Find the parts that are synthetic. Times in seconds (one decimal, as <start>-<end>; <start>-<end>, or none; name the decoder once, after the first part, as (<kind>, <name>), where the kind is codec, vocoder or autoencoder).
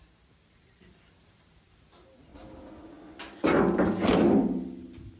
0.0-2.3 (vocoder, BigVGAN v2)